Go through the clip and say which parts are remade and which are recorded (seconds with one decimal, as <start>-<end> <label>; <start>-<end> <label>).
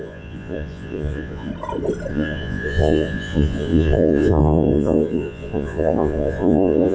0.0-1.5 remade; 1.5-2.1 recorded; 2.1-6.9 remade